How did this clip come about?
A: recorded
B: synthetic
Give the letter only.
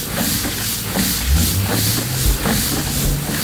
A